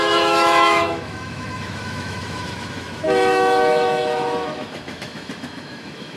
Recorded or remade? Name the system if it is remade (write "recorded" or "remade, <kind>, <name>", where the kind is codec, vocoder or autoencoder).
remade, autoencoder, DAC-VAE